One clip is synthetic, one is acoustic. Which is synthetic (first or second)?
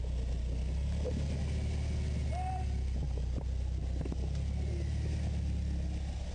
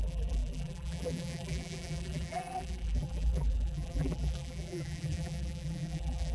second